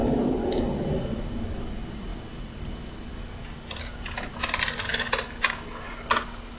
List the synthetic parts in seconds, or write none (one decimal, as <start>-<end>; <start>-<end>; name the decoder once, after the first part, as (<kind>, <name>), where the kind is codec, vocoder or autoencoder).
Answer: none